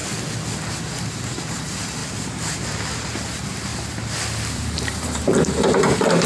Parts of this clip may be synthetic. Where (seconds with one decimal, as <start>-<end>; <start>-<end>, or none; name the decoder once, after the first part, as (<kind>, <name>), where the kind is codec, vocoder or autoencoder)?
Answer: 0.7-2.0 (vocoder, BigVGAN v2); 3.3-3.7; 4.5-6.3